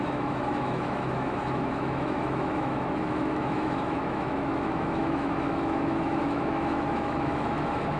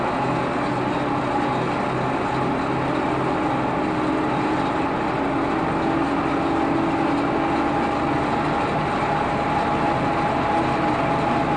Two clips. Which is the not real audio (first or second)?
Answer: first